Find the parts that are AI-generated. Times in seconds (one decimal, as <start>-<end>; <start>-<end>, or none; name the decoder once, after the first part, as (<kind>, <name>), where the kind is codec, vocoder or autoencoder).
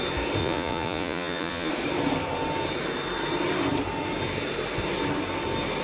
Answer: 0.4-1.7 (vocoder, Vocos)